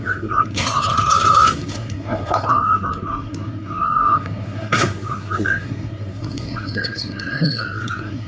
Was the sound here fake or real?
fake